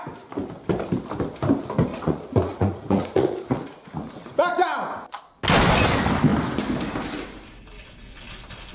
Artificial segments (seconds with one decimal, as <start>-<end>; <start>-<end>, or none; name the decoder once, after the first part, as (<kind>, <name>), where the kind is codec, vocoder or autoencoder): 1.9-4.5 (vocoder, Vocos)